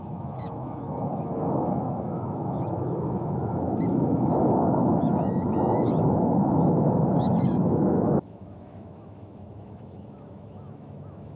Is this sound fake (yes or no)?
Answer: yes